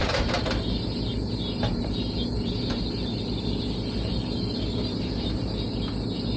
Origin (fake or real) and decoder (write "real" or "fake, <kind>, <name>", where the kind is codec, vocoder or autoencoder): real